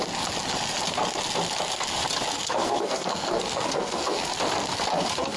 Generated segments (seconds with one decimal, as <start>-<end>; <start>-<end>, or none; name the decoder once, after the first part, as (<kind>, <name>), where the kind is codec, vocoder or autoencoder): 2.3-4.3 (codec, SNAC); 4.9-5.4